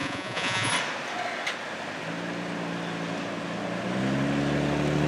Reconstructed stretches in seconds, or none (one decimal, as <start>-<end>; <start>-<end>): 0.0-0.7